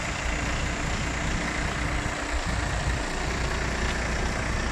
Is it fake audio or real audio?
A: real